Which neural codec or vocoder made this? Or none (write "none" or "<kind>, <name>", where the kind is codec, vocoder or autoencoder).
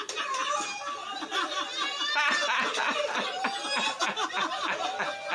none